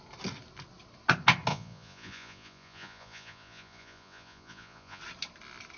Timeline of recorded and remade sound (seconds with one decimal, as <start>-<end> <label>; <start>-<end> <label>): 0.0-1.5 recorded; 1.5-5.0 remade; 5.0-5.8 recorded